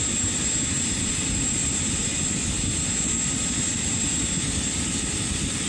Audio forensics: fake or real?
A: real